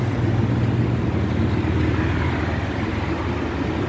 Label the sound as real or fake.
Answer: real